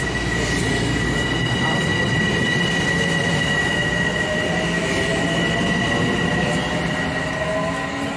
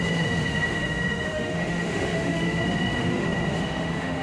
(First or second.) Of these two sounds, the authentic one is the first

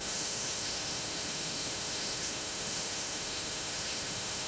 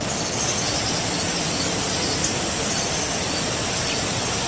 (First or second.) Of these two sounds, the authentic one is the second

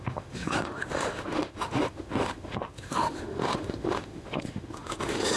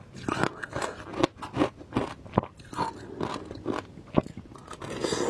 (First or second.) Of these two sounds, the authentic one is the second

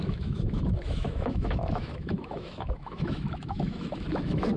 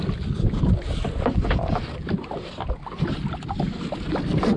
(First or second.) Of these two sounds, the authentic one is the second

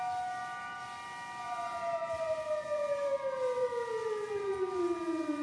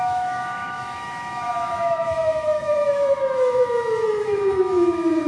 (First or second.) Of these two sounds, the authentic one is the first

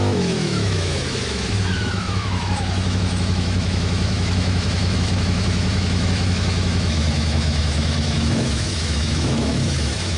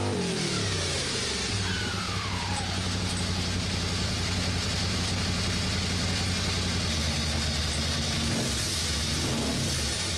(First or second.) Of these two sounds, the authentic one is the second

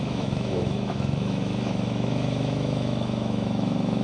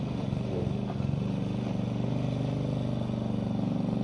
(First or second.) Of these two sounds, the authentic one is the second